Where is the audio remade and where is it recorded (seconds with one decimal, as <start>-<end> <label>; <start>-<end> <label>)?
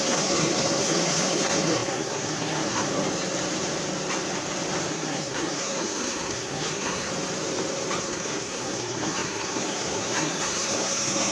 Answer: 0.0-2.9 remade; 2.9-4.9 recorded; 4.9-7.1 remade; 7.1-8.0 recorded; 8.0-11.3 remade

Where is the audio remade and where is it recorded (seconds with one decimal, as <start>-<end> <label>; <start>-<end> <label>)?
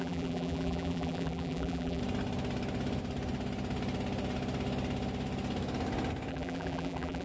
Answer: 0.0-2.0 remade; 2.0-6.3 recorded; 6.3-7.2 remade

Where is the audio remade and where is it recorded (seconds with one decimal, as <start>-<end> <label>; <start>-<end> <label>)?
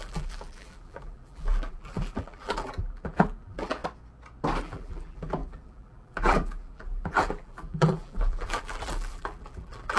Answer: 0.0-3.8 remade; 3.8-4.6 recorded; 4.6-10.0 remade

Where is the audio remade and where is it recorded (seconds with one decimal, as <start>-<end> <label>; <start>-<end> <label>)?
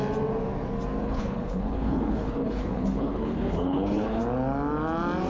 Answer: 0.0-1.0 recorded; 1.0-4.2 remade; 4.2-5.3 recorded